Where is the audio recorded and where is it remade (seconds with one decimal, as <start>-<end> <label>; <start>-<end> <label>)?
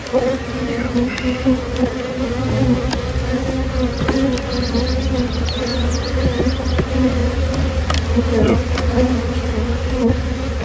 0.0-10.6 recorded